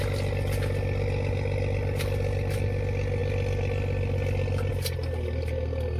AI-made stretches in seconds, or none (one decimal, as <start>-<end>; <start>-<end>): none